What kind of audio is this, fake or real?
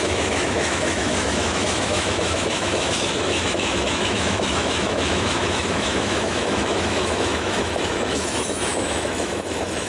fake